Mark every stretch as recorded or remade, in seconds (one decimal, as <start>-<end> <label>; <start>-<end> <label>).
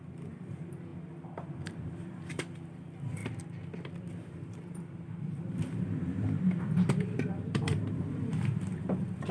0.0-3.2 remade; 3.2-4.1 recorded; 4.1-9.3 remade